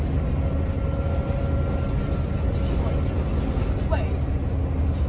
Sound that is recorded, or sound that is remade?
recorded